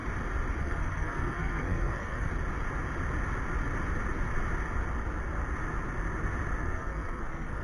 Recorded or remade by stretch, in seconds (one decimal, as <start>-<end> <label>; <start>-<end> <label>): 0.0-0.6 recorded; 0.6-2.3 remade; 2.3-6.6 recorded; 6.6-7.6 remade

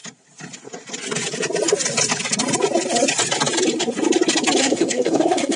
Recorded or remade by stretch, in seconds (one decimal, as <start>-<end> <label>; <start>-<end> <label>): 0.0-4.6 recorded; 4.6-5.6 remade

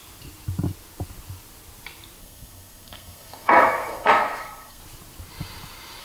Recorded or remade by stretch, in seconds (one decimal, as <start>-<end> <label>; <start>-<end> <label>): 0.0-2.2 recorded; 2.2-4.8 remade; 4.8-6.0 recorded

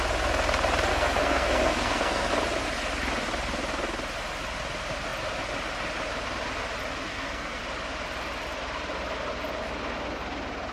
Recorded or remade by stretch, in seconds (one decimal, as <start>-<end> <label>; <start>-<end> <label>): 0.0-0.9 recorded; 0.9-2.3 remade; 2.3-7.1 recorded; 7.1-7.6 remade; 7.6-10.7 recorded